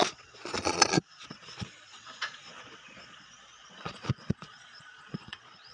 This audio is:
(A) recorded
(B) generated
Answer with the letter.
B